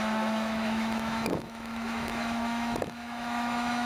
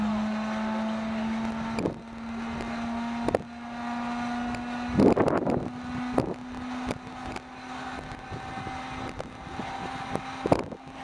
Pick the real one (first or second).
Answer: second